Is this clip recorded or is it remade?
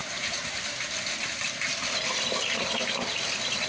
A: recorded